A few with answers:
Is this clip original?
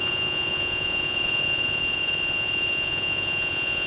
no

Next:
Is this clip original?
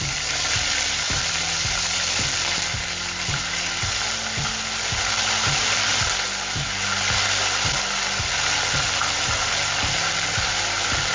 yes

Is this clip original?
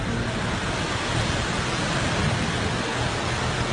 yes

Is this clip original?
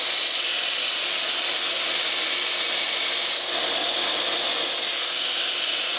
yes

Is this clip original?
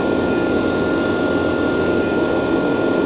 yes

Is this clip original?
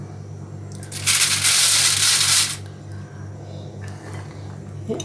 yes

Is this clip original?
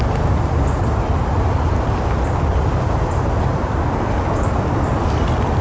yes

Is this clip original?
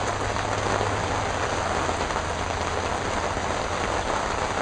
yes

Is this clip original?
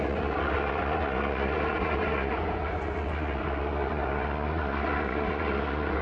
no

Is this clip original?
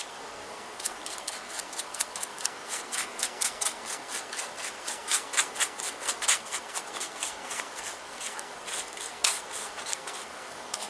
no